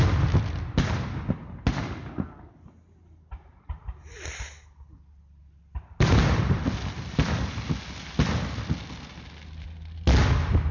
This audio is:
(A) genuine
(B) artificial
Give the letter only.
A